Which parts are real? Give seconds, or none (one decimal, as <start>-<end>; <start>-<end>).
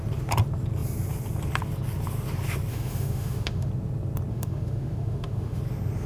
0.0-2.7; 3.7-4.3; 5.6-6.1